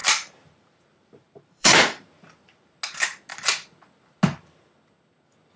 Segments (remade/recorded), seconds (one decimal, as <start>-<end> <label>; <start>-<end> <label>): 0.0-2.7 remade; 2.7-5.6 recorded